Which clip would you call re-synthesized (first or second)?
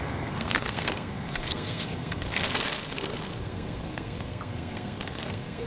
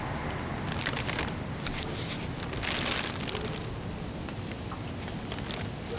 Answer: first